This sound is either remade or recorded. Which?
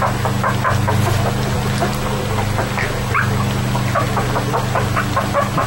recorded